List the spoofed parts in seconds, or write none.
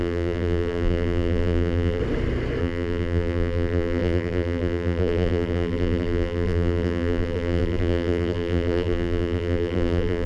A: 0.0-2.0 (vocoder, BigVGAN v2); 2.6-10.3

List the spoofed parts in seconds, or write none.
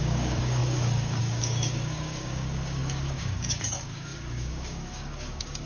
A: 0.0-5.7 (codec, DAC)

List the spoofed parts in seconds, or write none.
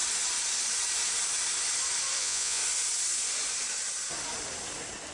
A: 2.2-2.6 (vocoder, Vocos)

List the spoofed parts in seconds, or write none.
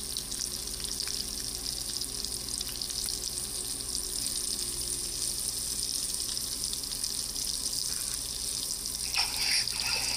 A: none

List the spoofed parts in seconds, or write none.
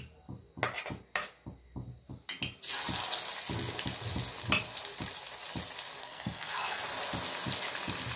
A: 6.0-6.8 (codec, SNAC)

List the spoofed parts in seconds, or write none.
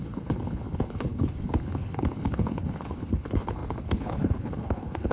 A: 0.0-5.1 (codec, HILCodec)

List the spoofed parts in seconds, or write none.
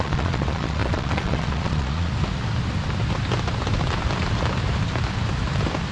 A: 0.0-2.1 (vocoder, Vocos)